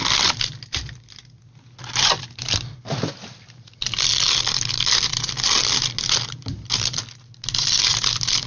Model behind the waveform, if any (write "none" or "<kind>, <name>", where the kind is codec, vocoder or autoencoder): none